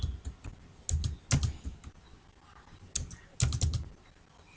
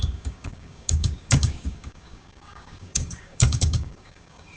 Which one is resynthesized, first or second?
second